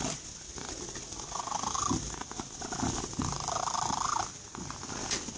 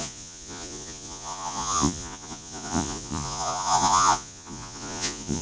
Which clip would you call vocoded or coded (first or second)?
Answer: second